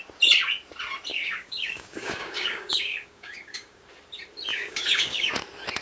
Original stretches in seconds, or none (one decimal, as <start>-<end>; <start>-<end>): 0.0-1.1; 3.8-4.5; 5.3-5.8